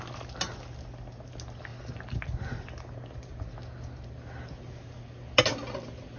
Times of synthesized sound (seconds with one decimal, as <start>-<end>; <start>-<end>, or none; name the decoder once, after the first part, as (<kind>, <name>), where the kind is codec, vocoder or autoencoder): none